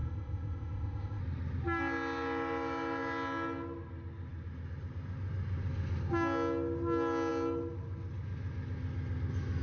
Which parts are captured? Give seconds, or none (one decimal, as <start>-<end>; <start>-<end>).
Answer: 1.2-9.6